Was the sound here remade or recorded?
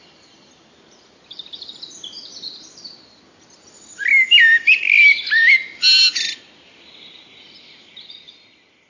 remade